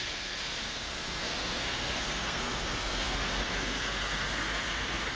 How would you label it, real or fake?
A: fake